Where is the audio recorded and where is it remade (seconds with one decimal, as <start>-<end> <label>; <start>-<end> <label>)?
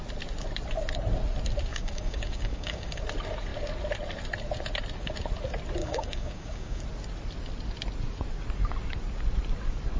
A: 0.0-1.7 recorded; 1.7-3.0 remade; 3.0-5.8 recorded; 5.8-6.8 remade; 6.8-10.0 recorded